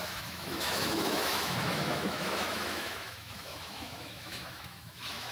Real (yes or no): no